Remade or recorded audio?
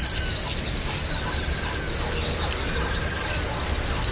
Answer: recorded